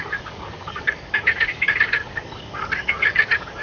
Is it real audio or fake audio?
fake